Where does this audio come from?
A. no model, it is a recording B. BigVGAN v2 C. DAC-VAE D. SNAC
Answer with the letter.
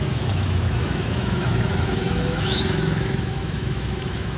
C